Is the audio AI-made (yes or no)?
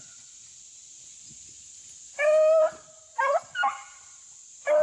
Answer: no